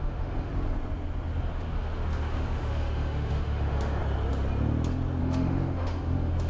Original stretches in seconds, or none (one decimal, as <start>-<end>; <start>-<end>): 0.5-1.4; 4.0-5.2